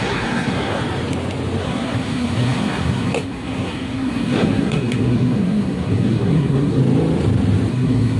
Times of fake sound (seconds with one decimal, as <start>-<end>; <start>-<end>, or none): 0.0-0.8; 1.6-6.8; 7.7-8.2